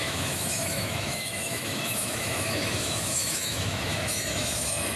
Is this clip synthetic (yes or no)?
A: yes